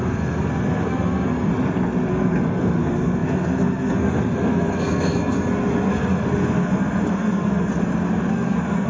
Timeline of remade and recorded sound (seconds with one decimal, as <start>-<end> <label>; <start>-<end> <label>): 0.0-1.5 remade; 1.5-2.1 recorded; 2.1-7.7 remade; 7.7-8.3 recorded; 8.3-8.9 remade